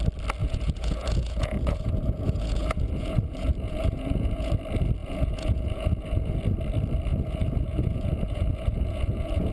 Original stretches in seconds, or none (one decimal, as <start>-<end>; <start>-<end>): 0.0-0.4; 4.5-5.0; 6.4-7.1